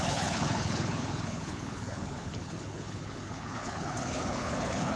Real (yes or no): no